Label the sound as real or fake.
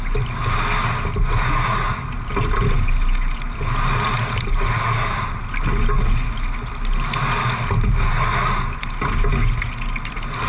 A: real